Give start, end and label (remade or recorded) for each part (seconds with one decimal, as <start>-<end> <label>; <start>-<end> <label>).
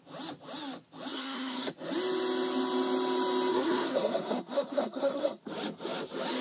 0.0-1.1 recorded; 1.1-1.7 remade; 1.7-3.5 recorded; 3.5-5.4 remade; 5.4-6.4 recorded